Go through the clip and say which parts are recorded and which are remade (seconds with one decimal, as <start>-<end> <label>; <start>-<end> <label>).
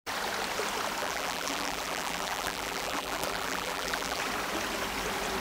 0.0-1.0 recorded; 1.0-4.2 remade; 4.2-5.4 recorded